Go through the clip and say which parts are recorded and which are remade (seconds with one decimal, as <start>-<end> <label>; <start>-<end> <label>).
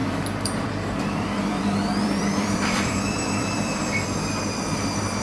0.0-5.2 remade